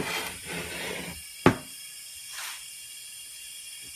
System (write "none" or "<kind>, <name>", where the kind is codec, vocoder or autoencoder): none